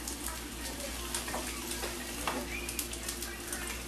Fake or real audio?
real